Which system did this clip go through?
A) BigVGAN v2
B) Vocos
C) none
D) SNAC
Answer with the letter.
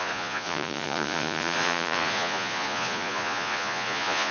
B